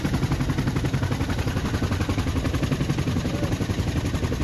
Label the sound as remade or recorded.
recorded